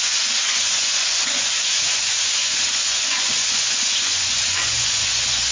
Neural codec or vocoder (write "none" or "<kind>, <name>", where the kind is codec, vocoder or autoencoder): vocoder, Vocos